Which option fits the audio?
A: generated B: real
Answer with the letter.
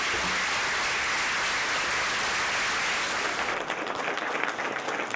B